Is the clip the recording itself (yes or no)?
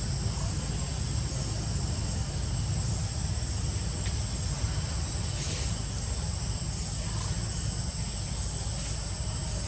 yes